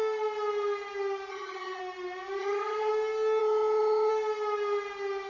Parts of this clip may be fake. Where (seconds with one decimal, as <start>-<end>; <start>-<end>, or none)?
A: 1.3-1.8; 2.4-2.9; 3.4-4.1